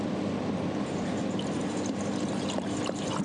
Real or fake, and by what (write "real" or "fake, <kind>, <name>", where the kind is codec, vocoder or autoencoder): real